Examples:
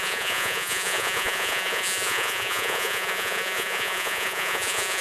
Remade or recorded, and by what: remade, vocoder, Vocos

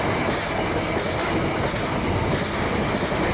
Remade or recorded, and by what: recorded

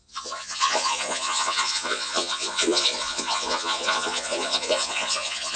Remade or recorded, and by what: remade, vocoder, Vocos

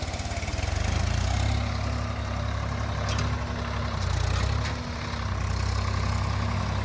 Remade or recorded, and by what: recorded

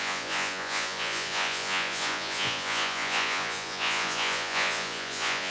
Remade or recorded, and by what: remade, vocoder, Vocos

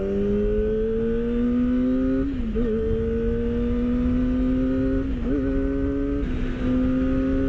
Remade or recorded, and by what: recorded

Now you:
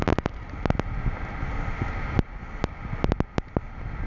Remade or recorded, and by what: recorded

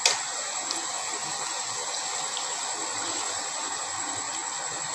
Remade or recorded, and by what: recorded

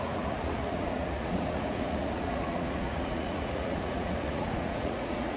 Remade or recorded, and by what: remade, vocoder, Vocos